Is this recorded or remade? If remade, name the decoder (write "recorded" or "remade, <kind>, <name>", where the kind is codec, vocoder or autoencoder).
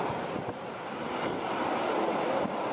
recorded